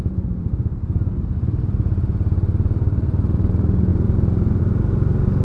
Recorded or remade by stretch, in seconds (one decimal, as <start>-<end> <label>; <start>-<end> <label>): 0.0-5.4 recorded